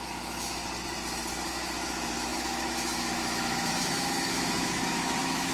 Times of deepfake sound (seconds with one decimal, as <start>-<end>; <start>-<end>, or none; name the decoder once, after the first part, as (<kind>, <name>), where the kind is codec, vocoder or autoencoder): 0.0-0.6 (autoencoder, DAC-VAE); 1.5-5.5